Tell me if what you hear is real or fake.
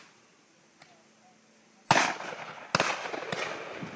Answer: real